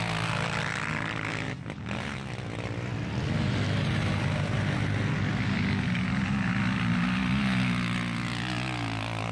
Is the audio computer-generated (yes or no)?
no